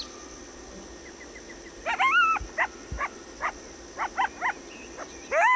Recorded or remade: recorded